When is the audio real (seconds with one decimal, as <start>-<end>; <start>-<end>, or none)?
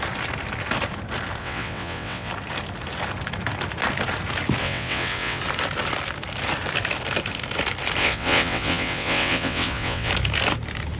0.0-1.4; 2.3-4.6; 5.4-8.0; 10.1-11.0